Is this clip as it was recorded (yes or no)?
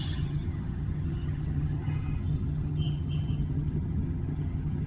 no